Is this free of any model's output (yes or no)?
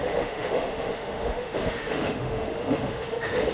no